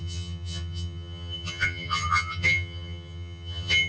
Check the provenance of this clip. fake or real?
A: fake